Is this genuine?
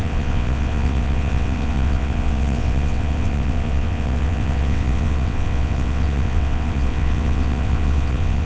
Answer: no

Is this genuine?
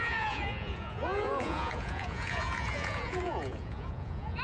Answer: no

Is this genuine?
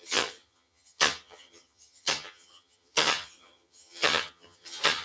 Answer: no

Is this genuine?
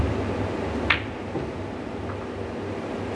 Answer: yes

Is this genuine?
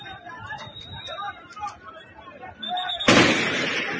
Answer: no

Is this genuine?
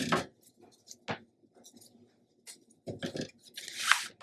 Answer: yes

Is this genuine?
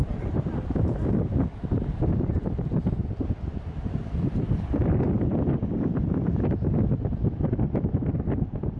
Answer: no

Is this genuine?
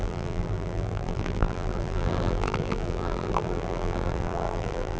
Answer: no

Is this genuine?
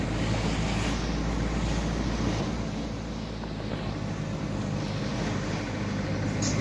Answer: yes